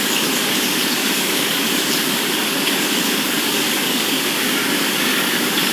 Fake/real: fake